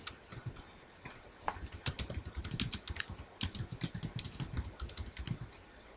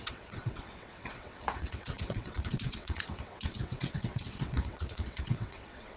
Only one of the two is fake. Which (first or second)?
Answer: second